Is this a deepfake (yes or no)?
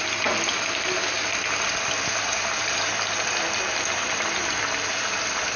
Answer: no